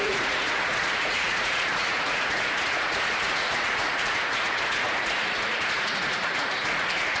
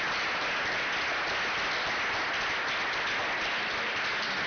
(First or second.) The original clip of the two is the second